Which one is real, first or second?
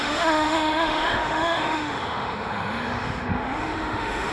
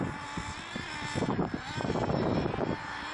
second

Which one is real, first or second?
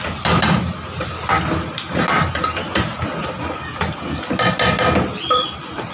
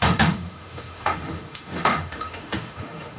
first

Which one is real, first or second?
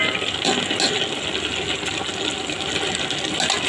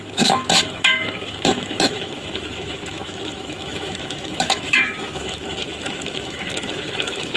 first